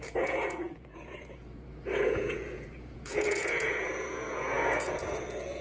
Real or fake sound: fake